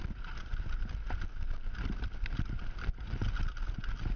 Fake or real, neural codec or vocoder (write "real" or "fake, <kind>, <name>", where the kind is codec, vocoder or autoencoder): real